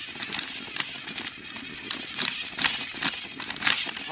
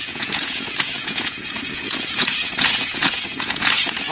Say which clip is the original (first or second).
first